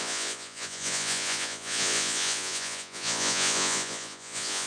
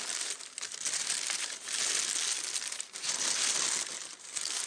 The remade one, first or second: first